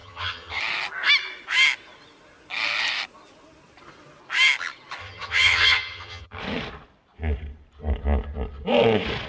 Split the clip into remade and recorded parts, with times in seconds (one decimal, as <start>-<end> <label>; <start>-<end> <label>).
0.0-0.6 remade; 0.6-5.0 recorded; 5.0-6.4 remade; 6.4-9.3 recorded

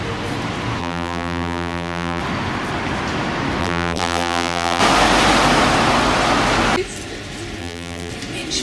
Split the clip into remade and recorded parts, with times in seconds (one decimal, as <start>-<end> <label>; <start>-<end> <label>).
0.0-0.8 recorded; 0.8-2.2 remade; 2.2-3.6 recorded; 3.6-4.8 remade; 4.8-7.6 recorded; 7.6-8.1 remade; 8.1-8.6 recorded

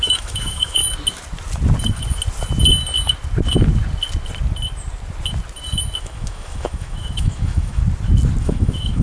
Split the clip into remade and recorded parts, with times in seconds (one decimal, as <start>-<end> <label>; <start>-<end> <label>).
0.0-0.8 remade; 0.8-6.0 recorded; 6.0-7.8 remade; 7.8-8.4 recorded; 8.4-9.0 remade

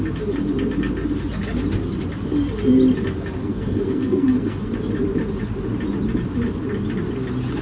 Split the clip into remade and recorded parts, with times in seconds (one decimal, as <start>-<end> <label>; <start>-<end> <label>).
0.0-3.4 recorded; 3.4-4.7 remade; 4.7-7.6 recorded

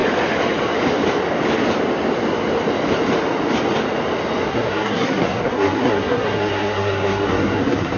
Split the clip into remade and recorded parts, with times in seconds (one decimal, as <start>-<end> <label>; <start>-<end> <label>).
0.0-4.5 recorded; 4.5-8.0 remade

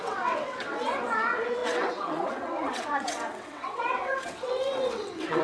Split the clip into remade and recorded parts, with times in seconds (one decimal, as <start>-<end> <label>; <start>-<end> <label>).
0.0-5.4 remade

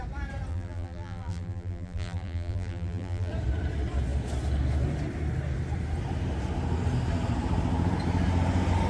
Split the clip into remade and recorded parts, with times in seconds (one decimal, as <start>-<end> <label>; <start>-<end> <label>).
0.0-0.5 recorded; 0.5-3.3 remade; 3.3-8.9 recorded

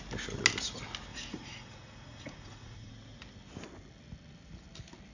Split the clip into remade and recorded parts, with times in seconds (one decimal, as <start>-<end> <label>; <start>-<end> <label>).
0.0-1.1 recorded; 1.1-2.9 remade; 2.9-5.1 recorded